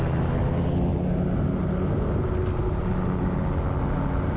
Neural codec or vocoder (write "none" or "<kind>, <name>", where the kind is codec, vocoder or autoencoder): none